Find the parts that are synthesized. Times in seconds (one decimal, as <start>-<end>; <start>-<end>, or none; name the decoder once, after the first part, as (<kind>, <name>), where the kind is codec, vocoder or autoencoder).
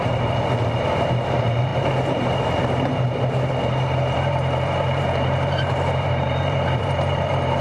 0.0-7.6 (vocoder, BigVGAN v2)